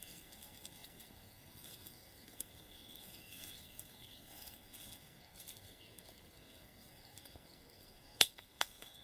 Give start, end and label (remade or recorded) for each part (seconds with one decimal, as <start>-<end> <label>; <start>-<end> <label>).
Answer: 0.0-9.0 remade